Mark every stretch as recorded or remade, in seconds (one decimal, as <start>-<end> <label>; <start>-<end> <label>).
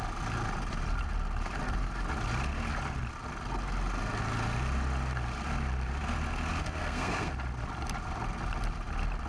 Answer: 0.0-6.8 recorded; 6.8-7.3 remade; 7.3-9.3 recorded